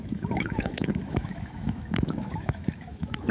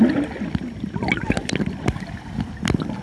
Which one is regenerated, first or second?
first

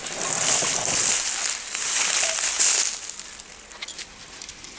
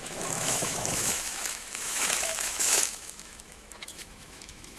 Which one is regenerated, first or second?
second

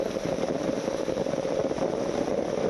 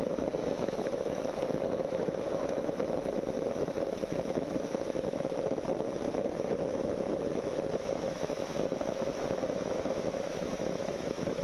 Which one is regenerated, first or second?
second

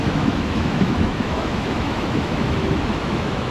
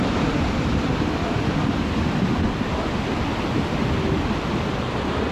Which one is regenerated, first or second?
first